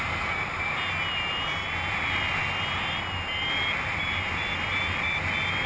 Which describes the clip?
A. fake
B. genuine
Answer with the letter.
B